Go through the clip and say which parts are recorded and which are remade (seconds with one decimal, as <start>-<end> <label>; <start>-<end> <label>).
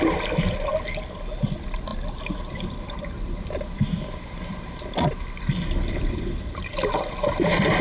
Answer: 0.0-7.8 recorded